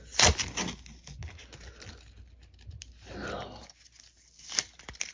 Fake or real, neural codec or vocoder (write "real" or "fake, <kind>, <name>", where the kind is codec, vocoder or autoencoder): real